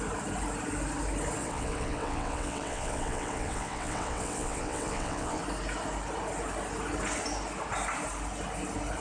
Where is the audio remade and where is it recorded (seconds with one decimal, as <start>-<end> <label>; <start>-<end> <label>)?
0.0-1.4 recorded; 1.4-5.4 remade; 5.4-9.0 recorded